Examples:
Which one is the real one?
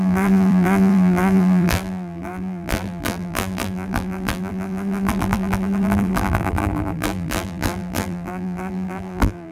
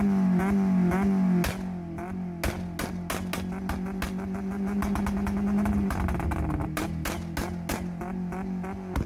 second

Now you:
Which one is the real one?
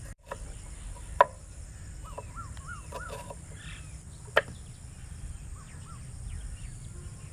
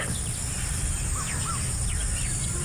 second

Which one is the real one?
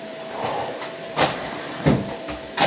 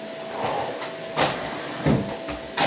second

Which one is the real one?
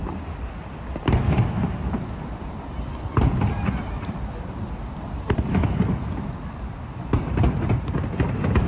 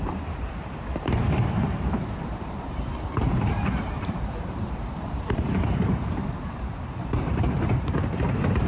first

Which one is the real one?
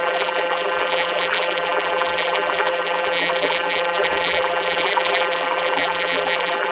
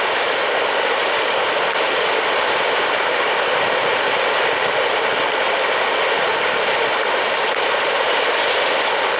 second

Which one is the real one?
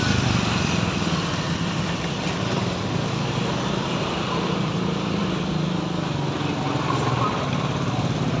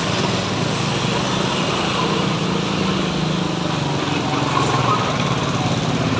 second